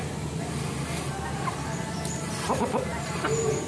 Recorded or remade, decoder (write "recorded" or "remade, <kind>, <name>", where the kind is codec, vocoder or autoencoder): recorded